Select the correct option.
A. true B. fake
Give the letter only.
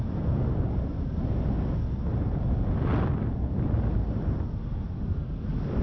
A